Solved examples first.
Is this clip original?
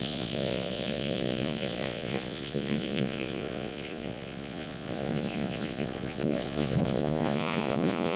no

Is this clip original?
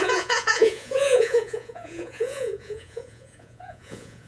no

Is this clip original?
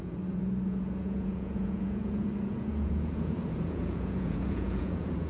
no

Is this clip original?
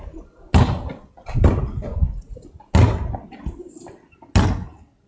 yes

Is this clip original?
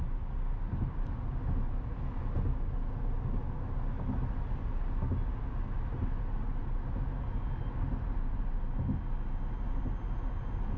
yes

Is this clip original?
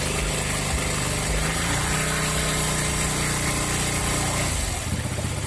yes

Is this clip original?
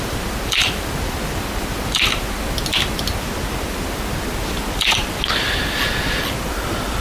yes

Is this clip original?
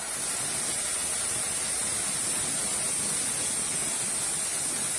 yes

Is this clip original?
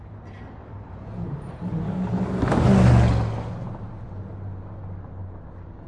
yes